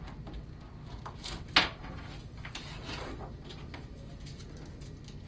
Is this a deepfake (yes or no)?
no